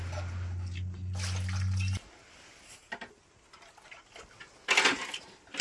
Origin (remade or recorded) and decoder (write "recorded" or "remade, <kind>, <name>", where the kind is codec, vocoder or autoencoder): recorded